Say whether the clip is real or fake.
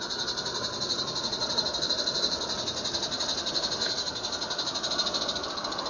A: real